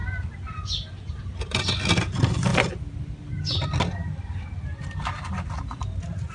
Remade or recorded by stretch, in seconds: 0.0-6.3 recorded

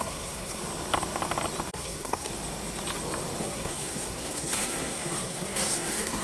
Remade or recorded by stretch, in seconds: 0.0-0.6 remade; 0.6-1.7 recorded; 1.7-2.3 remade; 2.3-3.4 recorded; 3.4-6.2 remade

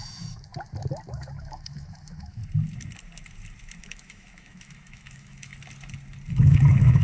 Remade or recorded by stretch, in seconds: 0.0-0.5 remade; 0.5-1.1 recorded; 1.1-2.4 remade; 2.4-3.8 recorded; 3.8-5.5 remade; 5.5-6.3 recorded; 6.3-7.0 remade

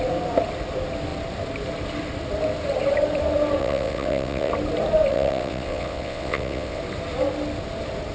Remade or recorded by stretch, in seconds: 0.0-3.6 recorded; 3.6-4.5 remade; 4.5-5.1 recorded; 5.1-6.8 remade; 6.8-8.1 recorded